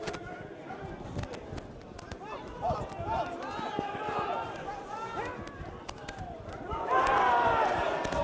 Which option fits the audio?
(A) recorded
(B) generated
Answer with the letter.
A